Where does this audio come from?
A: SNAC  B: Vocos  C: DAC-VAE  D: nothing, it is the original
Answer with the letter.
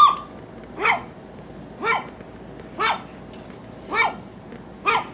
D